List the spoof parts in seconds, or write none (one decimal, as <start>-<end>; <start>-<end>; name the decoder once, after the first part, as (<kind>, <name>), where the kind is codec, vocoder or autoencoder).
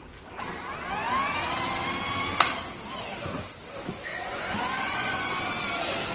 4.1-5.4 (vocoder, Vocos)